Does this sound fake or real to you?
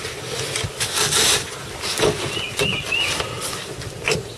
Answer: real